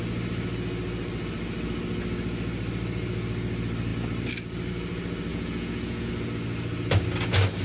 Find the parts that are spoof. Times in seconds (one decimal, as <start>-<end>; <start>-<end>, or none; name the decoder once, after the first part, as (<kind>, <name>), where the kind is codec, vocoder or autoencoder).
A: 5.3-6.1 (vocoder, Vocos)